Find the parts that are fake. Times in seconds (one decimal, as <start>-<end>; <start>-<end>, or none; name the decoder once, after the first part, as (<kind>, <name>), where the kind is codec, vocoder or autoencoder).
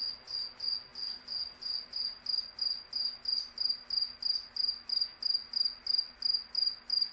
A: none